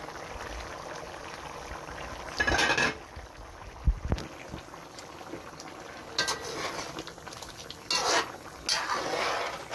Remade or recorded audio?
recorded